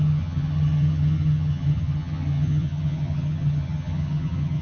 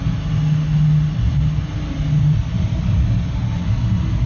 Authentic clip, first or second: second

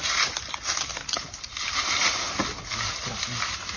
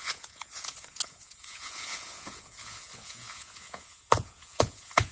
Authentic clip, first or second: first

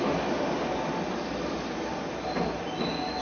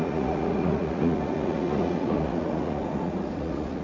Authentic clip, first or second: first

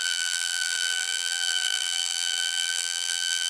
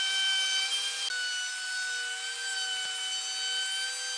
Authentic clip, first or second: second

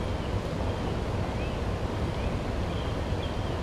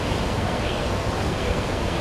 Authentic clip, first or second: first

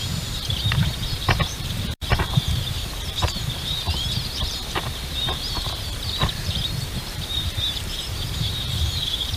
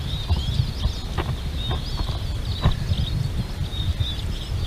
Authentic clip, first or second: second